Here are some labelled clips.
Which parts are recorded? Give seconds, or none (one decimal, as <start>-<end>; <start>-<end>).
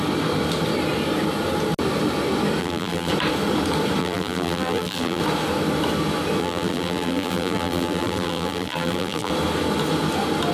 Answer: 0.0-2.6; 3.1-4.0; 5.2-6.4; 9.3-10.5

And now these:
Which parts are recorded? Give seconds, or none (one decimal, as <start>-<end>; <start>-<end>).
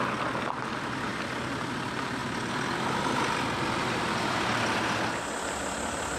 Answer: 0.0-6.2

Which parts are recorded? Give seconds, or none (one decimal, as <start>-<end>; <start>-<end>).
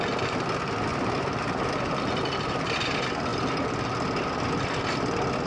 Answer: 0.0-0.9; 1.7-5.5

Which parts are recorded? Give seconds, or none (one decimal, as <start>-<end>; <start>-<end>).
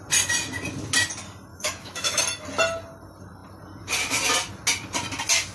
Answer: 0.0-1.5; 2.2-5.5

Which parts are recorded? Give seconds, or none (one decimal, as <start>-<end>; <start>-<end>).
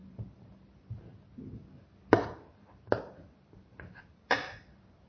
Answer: 1.0-1.6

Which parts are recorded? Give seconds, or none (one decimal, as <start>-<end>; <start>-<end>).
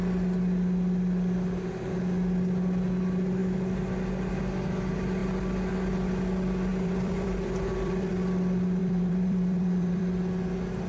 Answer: 0.0-6.7; 8.1-8.8; 10.0-10.9